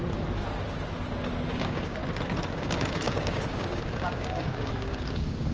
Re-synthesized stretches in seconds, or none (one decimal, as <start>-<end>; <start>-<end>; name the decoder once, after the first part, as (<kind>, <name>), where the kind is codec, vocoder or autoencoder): 1.5-2.0 (codec, DAC); 2.5-5.5